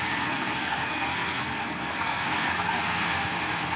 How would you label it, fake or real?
fake